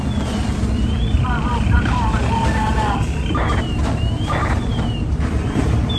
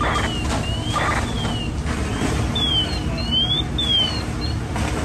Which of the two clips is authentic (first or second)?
second